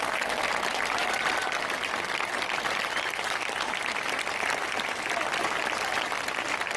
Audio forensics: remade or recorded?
recorded